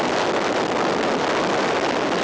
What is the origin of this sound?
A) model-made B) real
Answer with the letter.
B